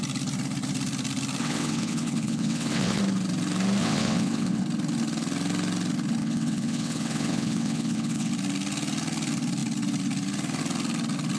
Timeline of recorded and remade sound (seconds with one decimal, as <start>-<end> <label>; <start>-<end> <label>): 0.0-1.4 recorded; 1.4-3.0 remade; 3.0-3.8 recorded; 3.8-4.6 remade; 4.6-6.2 recorded; 6.2-8.3 remade; 8.3-11.4 recorded